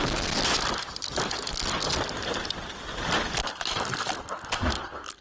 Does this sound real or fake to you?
real